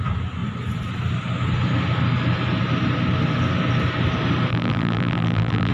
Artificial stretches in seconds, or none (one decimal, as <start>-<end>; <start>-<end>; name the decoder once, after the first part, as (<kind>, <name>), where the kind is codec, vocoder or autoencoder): 4.5-5.7 (vocoder, BigVGAN v2)